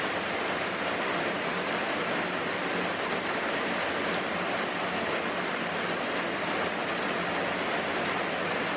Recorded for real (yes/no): yes